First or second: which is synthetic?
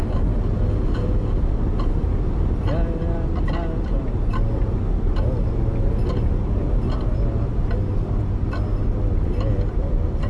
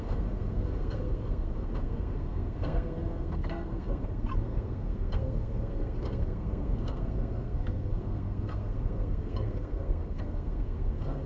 second